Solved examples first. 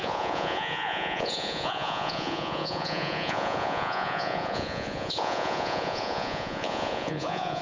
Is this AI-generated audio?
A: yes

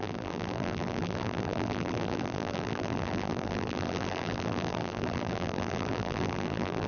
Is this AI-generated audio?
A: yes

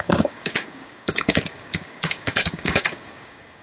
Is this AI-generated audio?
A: yes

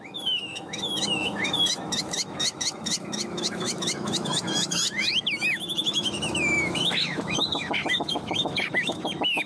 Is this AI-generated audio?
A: yes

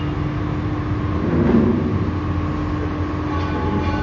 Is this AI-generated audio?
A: no